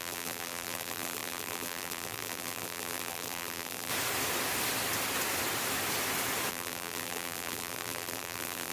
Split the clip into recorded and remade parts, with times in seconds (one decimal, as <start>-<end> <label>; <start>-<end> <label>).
0.0-3.9 remade; 3.9-6.5 recorded; 6.5-8.7 remade